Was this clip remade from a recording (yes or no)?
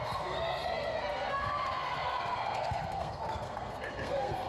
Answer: yes